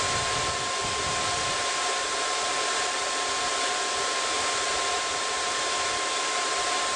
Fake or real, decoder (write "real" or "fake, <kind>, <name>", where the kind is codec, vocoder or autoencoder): real